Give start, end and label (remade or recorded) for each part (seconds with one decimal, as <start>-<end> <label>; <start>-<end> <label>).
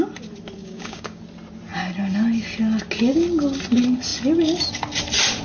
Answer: 0.0-0.6 recorded; 0.6-1.2 remade; 1.2-5.4 recorded